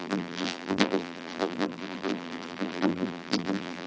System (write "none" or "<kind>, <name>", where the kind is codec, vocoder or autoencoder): vocoder, BigVGAN v2